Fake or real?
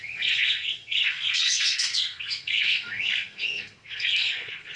fake